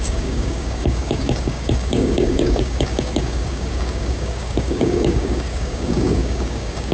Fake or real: fake